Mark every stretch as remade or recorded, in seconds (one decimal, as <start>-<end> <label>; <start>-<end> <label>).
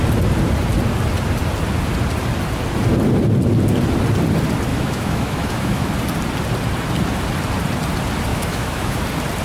0.0-4.7 recorded; 4.7-5.9 remade; 5.9-8.3 recorded; 8.3-9.0 remade; 9.0-9.4 recorded